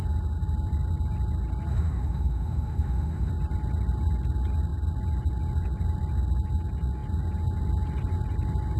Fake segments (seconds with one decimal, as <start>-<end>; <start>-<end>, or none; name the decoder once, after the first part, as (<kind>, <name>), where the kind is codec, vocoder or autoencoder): 1.7-3.3 (autoencoder, DAC-VAE)